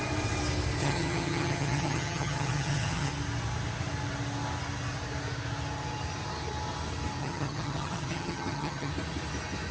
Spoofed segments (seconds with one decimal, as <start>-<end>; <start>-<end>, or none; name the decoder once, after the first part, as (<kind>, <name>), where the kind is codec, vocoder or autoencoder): 0.8-3.1 (vocoder, HiFi-GAN); 7.2-8.9